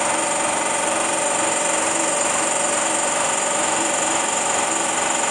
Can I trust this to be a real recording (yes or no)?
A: no